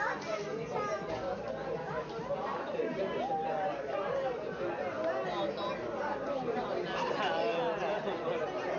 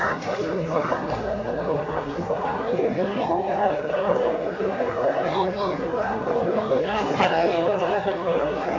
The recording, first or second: first